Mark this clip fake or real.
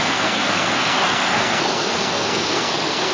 fake